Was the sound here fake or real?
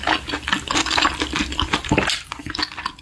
real